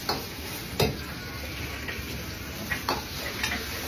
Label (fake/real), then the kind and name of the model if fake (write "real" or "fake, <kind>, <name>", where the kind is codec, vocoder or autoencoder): real